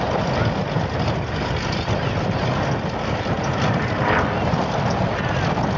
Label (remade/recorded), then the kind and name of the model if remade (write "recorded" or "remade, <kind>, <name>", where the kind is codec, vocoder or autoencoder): recorded